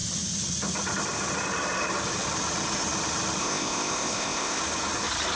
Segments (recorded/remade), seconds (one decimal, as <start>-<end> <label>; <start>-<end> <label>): 0.0-3.4 recorded; 3.4-4.6 remade; 4.6-5.4 recorded